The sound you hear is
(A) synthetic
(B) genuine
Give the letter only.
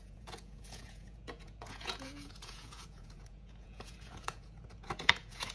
A